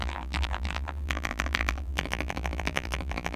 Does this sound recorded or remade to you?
remade